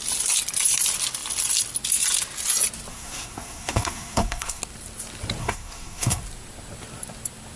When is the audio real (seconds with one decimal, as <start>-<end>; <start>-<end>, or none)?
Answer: 0.0-2.9; 4.6-5.4; 6.2-7.6